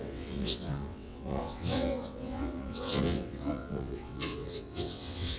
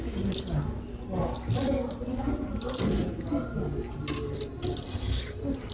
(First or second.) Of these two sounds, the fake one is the first